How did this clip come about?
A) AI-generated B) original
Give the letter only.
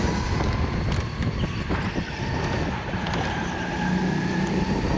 B